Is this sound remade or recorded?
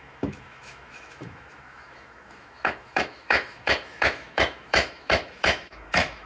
remade